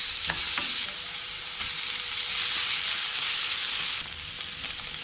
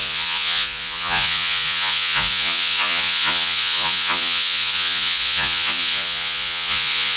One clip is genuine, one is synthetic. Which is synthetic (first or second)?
second